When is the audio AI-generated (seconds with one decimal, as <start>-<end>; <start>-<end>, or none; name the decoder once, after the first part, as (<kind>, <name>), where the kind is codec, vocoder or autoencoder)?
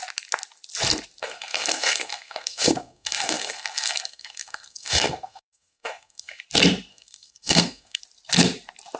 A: 1.2-6.4 (codec, SNAC); 6.9-8.0